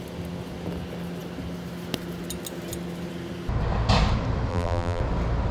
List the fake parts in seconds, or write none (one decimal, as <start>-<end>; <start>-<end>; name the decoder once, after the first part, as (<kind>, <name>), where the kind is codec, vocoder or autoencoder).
4.5-5.0 (vocoder, BigVGAN v2)

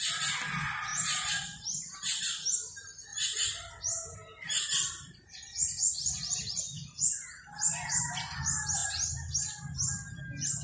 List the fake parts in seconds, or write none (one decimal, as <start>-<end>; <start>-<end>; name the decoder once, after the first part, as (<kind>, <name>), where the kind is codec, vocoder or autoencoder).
0.9-2.2 (vocoder, BigVGAN v2); 3.1-5.9